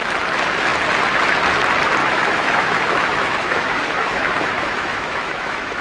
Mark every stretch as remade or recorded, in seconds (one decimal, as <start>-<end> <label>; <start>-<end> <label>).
0.0-2.0 recorded; 2.0-5.8 remade